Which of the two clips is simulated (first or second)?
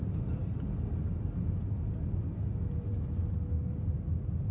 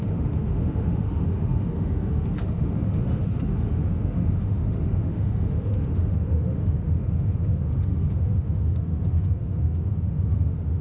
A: second